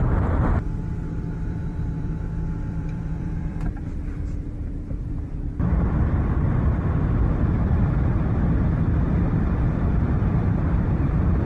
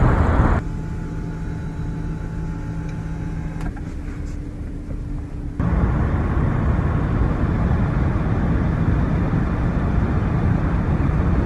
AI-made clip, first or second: first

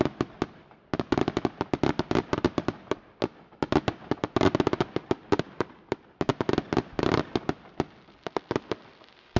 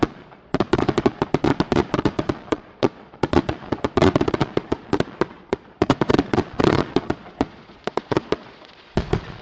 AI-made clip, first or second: second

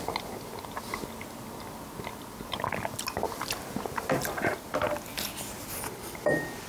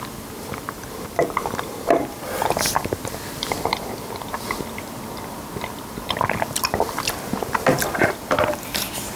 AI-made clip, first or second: second